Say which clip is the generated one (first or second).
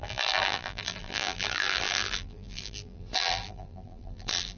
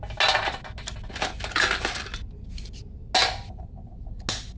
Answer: first